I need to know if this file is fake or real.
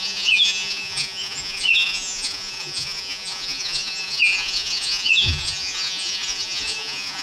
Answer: fake